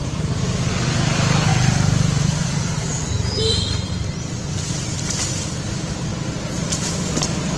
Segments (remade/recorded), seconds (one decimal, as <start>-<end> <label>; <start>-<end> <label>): 0.0-0.7 recorded; 0.7-6.1 remade; 6.1-6.6 recorded; 6.6-7.6 remade